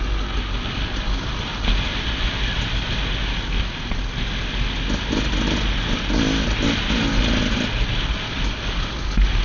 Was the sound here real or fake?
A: real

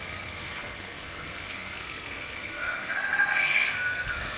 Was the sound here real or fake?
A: fake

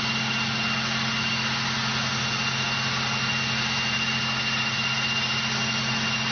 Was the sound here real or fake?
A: real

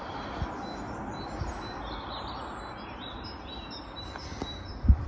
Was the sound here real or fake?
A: real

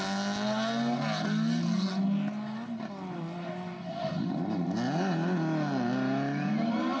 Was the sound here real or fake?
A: real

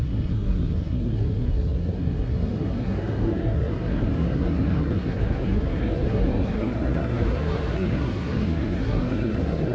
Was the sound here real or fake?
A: fake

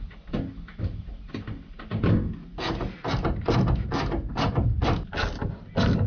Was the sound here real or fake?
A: real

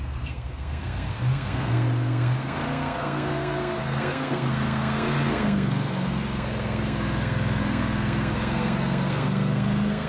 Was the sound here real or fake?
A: fake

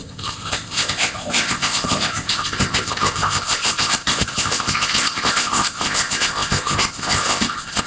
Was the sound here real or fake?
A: fake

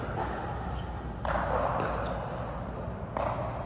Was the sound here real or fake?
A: real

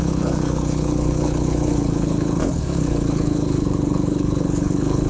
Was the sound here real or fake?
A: fake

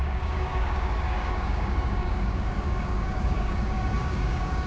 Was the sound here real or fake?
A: fake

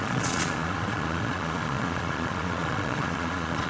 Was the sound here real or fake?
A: fake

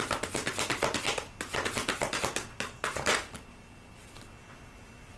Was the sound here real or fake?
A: real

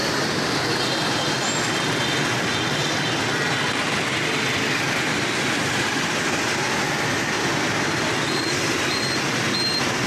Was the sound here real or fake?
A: real